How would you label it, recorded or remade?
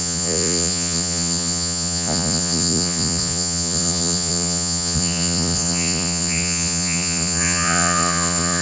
remade